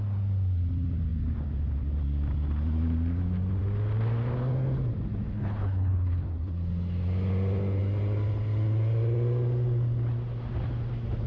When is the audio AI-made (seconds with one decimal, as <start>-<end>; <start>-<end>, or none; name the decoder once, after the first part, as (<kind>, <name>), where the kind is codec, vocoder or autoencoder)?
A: 5.3-6.2 (codec, HILCodec)